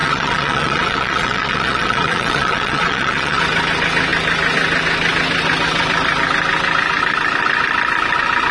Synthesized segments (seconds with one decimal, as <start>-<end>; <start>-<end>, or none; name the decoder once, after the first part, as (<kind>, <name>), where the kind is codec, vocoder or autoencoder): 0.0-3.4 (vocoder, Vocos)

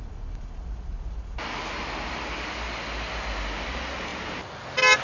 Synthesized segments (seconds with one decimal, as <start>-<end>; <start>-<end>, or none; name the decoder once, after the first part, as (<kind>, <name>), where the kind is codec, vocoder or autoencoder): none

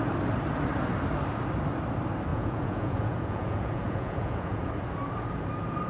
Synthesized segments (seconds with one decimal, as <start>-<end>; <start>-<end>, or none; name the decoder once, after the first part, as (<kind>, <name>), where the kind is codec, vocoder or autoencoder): 2.3-4.7 (vocoder, Vocos)

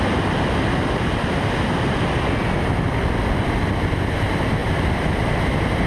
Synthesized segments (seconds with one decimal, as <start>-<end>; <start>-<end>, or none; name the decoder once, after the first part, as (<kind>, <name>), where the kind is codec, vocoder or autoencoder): none

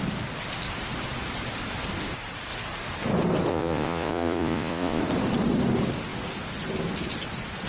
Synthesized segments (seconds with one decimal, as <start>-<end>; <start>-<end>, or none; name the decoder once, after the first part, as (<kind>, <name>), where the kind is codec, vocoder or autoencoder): 3.5-5.0 (vocoder, Vocos)

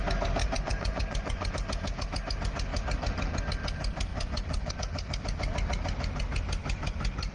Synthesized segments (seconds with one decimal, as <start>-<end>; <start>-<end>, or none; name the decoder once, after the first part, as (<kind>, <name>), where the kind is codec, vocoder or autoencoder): 0.4-1.5 (vocoder, Vocos); 4.1-4.7

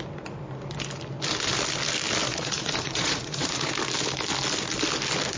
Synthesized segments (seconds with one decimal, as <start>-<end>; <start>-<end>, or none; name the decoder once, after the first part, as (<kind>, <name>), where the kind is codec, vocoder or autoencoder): 2.3-3.7 (vocoder, Vocos)